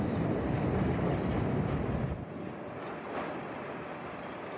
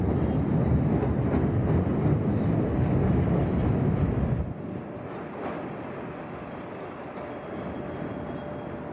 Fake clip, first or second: first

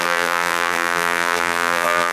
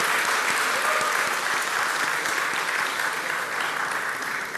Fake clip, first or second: first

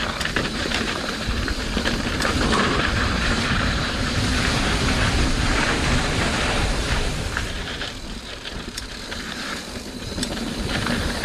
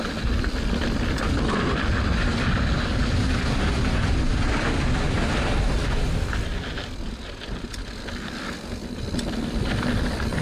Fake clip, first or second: first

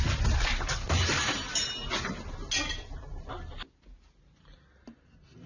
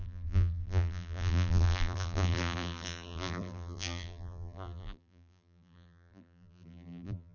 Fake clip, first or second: second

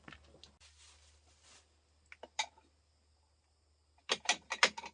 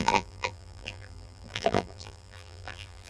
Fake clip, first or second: second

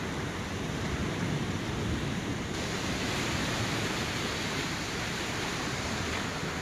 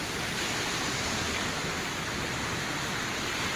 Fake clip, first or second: first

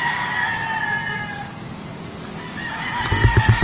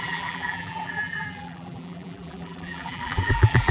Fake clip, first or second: second